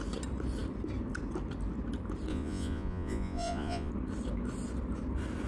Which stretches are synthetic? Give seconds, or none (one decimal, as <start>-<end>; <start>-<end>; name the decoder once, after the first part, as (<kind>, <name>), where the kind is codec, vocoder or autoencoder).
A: 2.3-3.9 (vocoder, Vocos)